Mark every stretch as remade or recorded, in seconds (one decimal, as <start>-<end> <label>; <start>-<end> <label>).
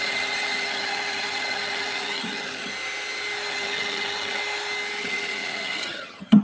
0.0-2.7 remade; 2.7-3.5 recorded; 3.5-4.4 remade; 4.4-5.0 recorded; 5.0-6.4 remade